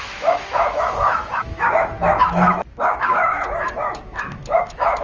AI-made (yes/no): yes